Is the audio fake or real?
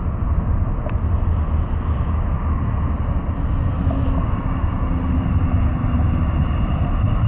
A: real